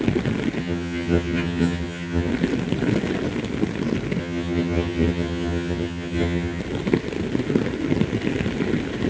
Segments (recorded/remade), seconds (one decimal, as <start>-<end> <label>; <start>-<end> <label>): 0.0-0.6 recorded; 0.6-2.3 remade; 2.3-4.2 recorded; 4.2-6.6 remade; 6.6-9.1 recorded